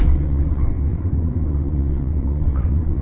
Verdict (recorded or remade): remade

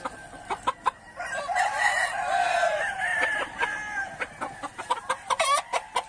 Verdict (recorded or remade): recorded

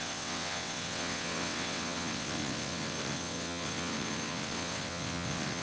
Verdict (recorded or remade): remade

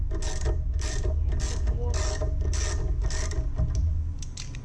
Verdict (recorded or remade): recorded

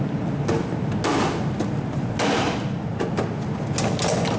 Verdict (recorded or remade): recorded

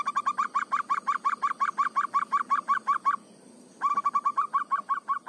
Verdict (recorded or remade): recorded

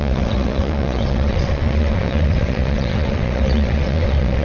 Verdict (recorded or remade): remade